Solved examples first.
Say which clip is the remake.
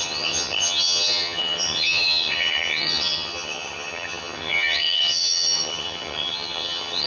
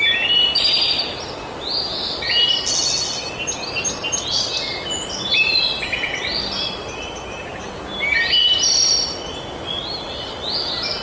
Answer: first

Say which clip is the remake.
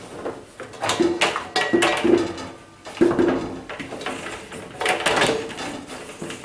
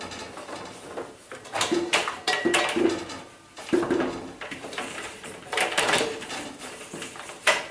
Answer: second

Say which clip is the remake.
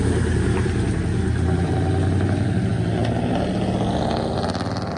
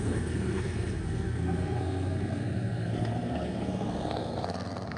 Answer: second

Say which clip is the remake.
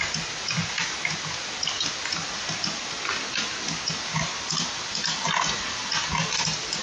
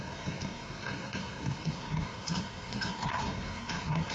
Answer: second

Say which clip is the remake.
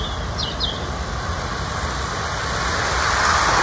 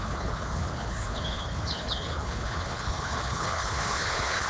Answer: second